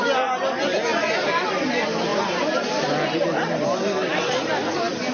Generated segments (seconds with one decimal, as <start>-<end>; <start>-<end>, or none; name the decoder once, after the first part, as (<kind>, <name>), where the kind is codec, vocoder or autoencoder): none